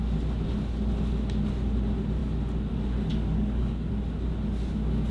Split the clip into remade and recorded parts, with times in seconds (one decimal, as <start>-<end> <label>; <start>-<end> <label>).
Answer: 0.0-3.1 recorded; 3.1-3.9 remade; 3.9-5.1 recorded